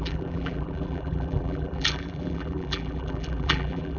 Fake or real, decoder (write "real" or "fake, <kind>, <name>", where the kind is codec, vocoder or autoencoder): fake, vocoder, BigVGAN v2